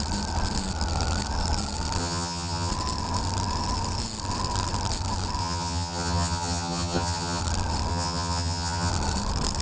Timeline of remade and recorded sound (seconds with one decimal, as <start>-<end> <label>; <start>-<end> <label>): 0.0-2.0 recorded; 2.0-2.7 remade; 2.7-5.4 recorded; 5.4-7.4 remade; 7.4-7.9 recorded; 7.9-8.9 remade; 8.9-9.6 recorded